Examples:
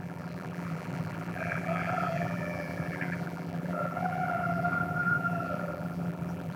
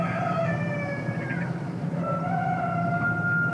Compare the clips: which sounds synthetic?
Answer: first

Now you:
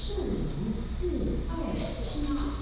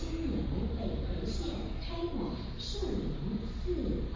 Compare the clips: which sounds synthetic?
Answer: second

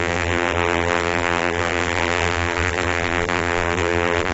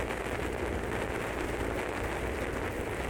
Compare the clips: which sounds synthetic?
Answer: first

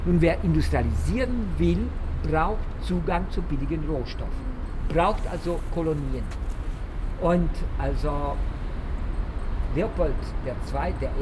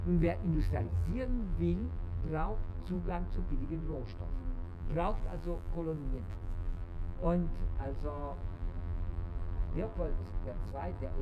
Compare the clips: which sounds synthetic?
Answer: second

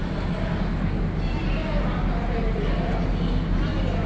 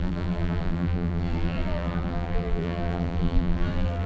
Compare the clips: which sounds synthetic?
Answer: second